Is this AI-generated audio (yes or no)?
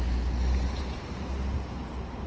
no